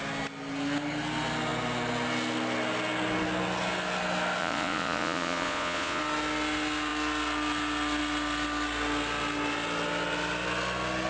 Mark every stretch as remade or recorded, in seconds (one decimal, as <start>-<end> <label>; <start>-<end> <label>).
0.0-4.4 recorded; 4.4-6.0 remade; 6.0-11.1 recorded